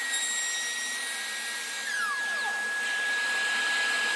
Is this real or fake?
real